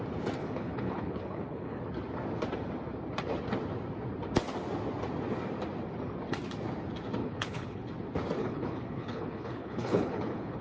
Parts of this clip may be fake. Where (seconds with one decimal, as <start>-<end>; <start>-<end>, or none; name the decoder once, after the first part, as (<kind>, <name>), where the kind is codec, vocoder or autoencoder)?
0.4-1.8 (codec, HILCodec); 7.2-7.9; 8.4-10.6